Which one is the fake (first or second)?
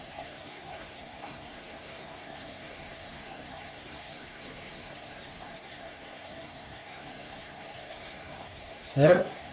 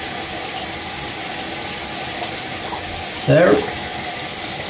first